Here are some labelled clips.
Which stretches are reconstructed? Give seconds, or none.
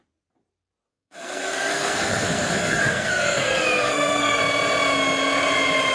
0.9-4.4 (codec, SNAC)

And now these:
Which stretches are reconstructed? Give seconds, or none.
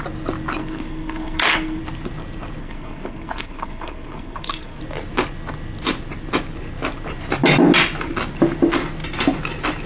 0.6-1.8 (codec, SNAC); 2.6-4.8